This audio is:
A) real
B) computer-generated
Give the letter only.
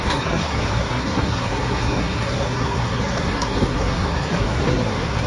B